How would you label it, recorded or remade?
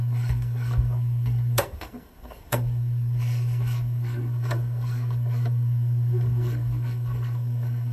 remade